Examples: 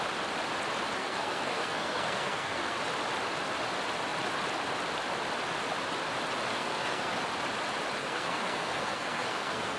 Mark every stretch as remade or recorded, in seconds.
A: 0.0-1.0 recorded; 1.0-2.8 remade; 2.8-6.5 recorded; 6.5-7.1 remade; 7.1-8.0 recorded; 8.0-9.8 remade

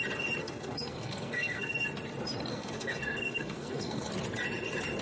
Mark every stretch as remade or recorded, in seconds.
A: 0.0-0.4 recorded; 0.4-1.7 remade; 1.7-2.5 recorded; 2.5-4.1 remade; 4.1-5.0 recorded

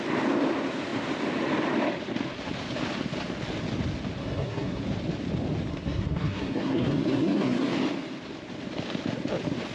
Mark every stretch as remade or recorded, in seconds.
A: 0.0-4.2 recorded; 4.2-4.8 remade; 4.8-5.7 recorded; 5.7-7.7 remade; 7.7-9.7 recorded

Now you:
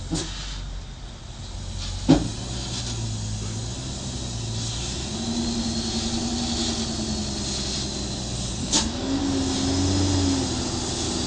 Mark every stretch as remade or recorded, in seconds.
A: 0.0-8.6 recorded; 8.6-9.2 remade; 9.2-11.3 recorded

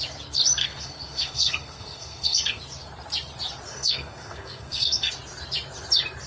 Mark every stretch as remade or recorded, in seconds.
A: 0.0-0.6 recorded; 0.6-2.6 remade; 2.6-3.7 recorded; 3.7-5.1 remade; 5.1-6.3 recorded